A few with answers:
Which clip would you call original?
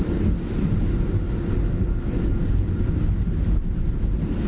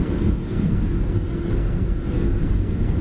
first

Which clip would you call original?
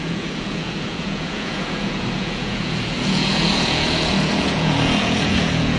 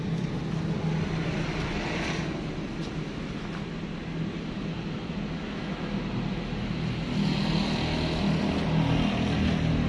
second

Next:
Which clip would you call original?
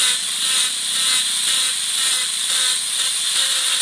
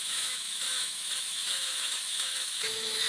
first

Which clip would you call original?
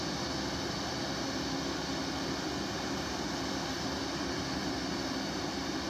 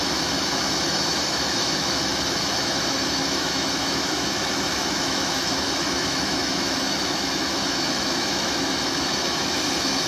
first